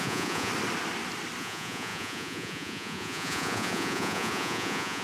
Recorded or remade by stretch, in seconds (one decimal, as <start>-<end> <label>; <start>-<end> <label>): 0.0-0.5 remade; 0.5-1.4 recorded; 1.4-5.0 remade